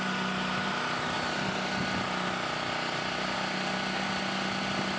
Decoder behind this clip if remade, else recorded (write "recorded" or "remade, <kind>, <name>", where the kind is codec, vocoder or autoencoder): recorded